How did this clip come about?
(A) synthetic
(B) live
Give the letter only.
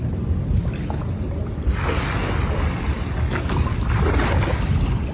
B